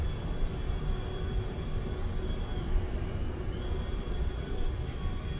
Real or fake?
real